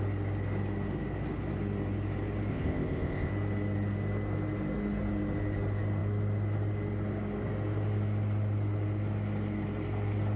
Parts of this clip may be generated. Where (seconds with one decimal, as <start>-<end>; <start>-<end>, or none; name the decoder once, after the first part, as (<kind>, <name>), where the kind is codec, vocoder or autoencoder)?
2.5-3.3 (codec, ZipCodec)